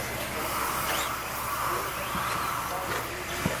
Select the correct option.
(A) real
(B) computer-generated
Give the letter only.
A